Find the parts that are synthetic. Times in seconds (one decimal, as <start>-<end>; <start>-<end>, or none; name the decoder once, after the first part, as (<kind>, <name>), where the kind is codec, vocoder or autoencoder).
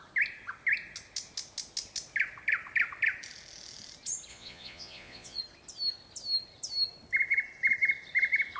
4.3-5.4 (vocoder, Vocos)